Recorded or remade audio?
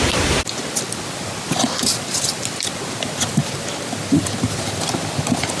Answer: recorded